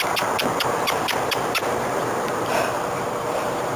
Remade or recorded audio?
remade